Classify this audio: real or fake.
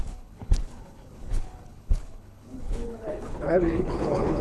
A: fake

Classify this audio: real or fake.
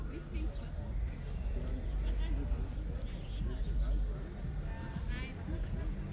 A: real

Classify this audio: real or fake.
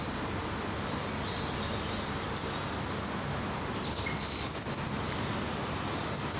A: real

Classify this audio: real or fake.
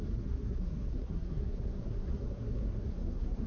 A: fake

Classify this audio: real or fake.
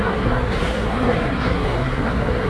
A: fake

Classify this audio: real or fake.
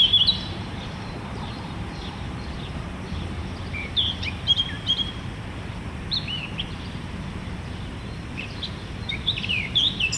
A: fake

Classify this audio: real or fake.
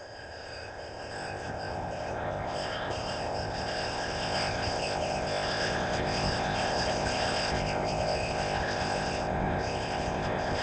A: fake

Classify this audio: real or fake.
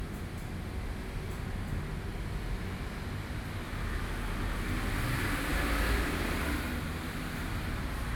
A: real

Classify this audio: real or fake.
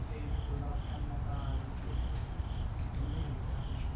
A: real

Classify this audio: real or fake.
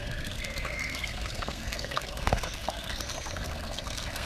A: fake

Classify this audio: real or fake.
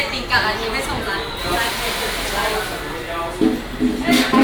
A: real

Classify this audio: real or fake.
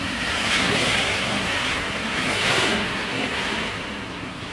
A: fake